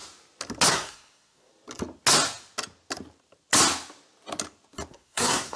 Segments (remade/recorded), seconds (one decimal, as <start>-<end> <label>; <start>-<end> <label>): 0.0-0.7 recorded; 0.7-1.5 remade; 1.5-4.9 recorded; 4.9-5.6 remade